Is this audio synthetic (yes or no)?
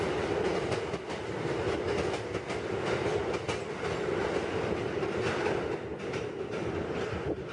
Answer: no